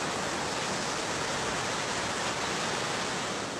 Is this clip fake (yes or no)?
no